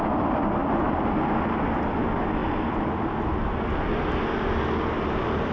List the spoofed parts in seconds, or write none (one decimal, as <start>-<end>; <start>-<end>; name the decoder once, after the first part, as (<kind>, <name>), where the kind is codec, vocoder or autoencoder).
none